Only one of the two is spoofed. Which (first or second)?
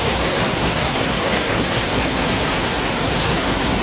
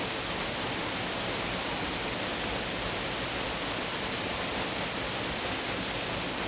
first